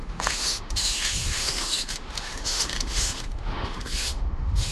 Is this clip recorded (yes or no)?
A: no